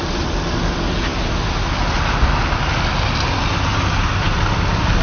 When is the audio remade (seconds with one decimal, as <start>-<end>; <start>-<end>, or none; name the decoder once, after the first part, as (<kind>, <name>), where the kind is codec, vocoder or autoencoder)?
none